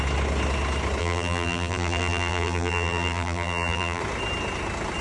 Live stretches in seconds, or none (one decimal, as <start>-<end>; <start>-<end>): 0.0-1.0; 4.0-5.0